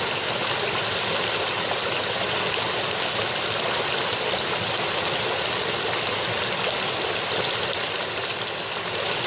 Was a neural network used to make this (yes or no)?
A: no